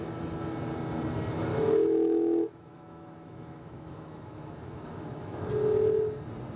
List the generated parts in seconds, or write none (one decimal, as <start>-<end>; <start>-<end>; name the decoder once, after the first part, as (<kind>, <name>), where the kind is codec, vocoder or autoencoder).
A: 1.5-5.5 (autoencoder, DAC-VAE)